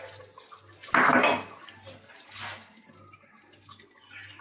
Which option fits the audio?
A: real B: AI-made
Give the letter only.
A